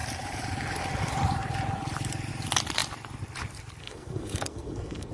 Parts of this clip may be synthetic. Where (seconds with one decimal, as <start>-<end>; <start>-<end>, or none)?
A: 3.8-5.1